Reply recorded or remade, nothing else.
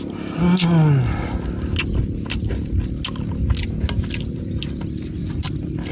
recorded